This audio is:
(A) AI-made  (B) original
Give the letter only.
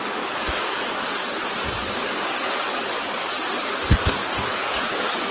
A